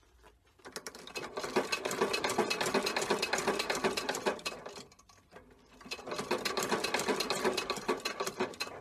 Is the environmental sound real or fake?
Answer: real